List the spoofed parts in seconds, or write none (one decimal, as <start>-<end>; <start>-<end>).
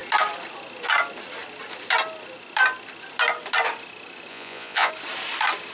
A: 4.3-4.9